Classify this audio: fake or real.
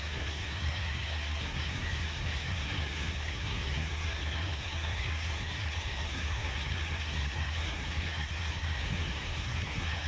fake